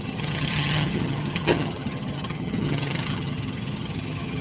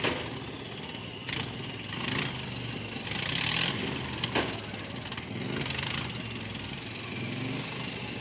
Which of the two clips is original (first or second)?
second